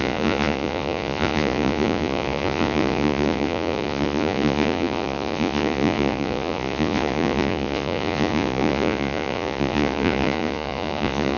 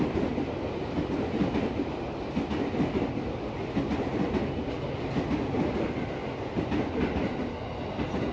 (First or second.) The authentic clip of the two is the second